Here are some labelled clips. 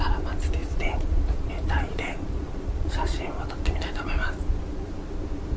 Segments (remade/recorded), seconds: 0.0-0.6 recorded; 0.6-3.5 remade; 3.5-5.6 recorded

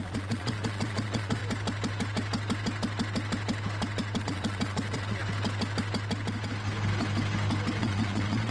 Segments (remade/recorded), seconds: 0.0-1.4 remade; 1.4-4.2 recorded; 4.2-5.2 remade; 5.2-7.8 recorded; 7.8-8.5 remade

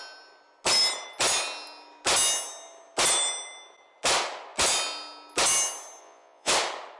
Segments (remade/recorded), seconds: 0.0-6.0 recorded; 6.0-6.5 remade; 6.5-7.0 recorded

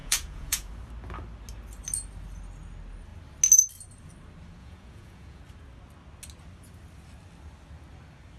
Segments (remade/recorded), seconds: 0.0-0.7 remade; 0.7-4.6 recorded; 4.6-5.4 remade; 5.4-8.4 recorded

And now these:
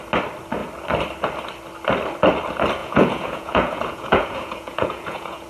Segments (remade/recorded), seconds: 0.0-2.8 recorded; 2.8-5.5 remade

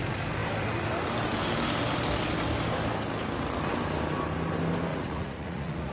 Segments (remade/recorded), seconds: 0.0-4.9 recorded; 4.9-5.9 remade